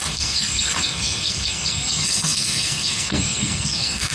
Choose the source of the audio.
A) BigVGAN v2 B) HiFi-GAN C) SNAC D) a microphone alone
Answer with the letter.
C